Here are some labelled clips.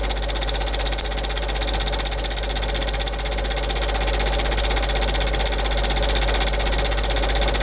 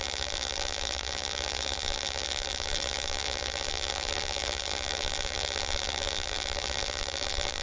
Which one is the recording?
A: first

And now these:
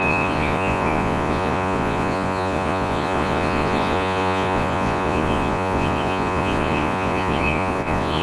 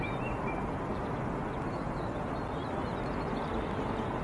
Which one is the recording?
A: second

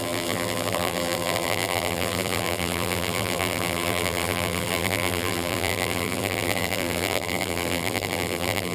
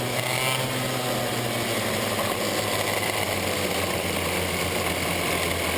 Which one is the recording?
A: second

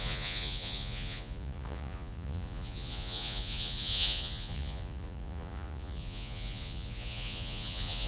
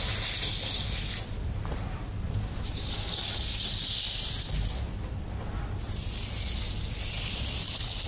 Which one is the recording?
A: second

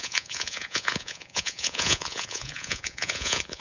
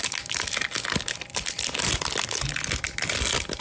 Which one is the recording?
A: second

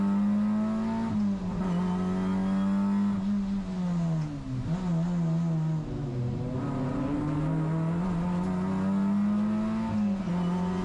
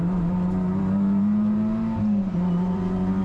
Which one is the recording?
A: first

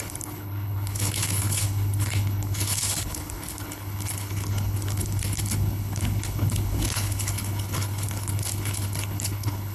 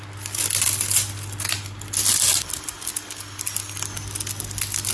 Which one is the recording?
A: second